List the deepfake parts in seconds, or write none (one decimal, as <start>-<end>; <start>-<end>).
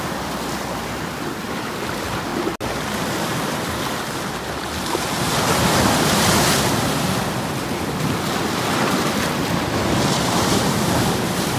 none